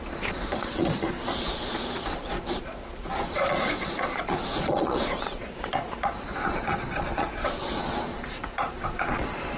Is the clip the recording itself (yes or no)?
no